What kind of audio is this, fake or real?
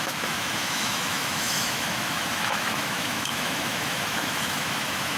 fake